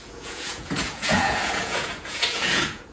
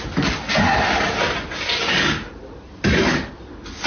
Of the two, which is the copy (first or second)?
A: first